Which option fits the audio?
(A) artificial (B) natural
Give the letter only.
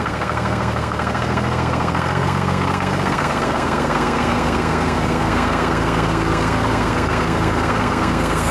A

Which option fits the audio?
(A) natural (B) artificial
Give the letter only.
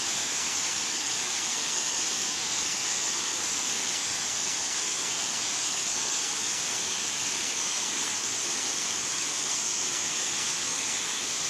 B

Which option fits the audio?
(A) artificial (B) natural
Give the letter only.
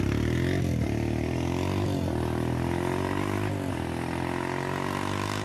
B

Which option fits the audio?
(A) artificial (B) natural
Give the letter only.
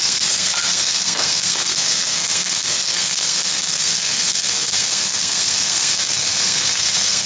A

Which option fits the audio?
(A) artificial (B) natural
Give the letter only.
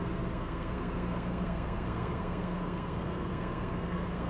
A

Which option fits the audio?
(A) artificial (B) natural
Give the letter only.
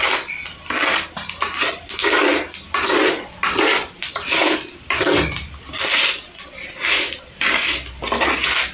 B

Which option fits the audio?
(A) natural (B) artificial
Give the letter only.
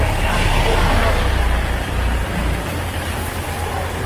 A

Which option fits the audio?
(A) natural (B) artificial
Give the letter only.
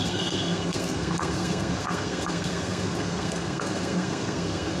B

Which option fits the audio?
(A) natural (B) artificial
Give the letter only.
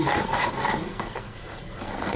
B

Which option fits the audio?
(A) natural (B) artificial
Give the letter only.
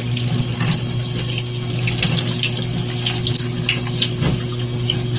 A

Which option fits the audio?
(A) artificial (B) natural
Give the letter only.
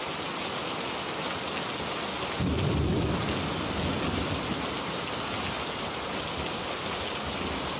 B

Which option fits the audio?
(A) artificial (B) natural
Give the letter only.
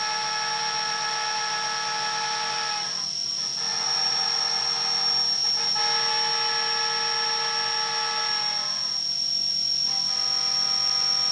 B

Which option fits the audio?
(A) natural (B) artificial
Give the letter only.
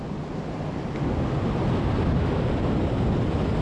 A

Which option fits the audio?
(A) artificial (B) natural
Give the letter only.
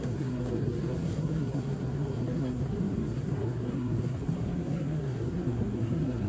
A